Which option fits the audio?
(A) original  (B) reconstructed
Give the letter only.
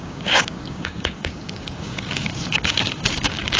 B